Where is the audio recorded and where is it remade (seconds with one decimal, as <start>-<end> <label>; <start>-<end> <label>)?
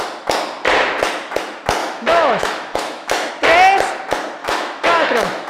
0.0-1.8 recorded; 1.8-3.3 remade; 3.3-4.4 recorded; 4.4-5.5 remade